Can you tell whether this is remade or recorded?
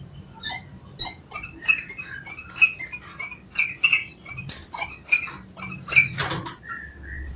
recorded